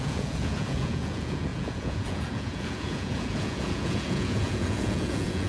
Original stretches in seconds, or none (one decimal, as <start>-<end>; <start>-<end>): none